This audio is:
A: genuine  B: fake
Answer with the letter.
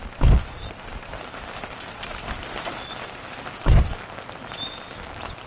A